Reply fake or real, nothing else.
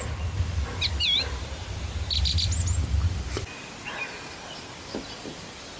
real